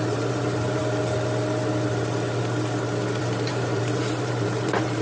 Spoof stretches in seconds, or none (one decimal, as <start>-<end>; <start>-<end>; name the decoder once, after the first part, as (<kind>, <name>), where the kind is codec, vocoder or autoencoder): 0.0-0.8 (vocoder, BigVGAN v2); 3.2-5.0